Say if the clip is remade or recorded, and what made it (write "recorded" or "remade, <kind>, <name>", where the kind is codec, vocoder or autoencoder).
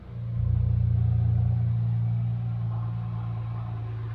recorded